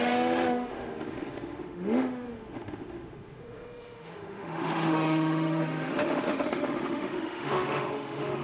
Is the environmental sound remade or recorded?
remade